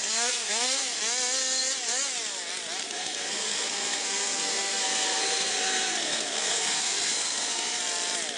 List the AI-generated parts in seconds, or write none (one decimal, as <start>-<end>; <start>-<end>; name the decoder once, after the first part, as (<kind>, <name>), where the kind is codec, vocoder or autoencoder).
0.0-1.0 (codec, SNAC); 2.8-7.8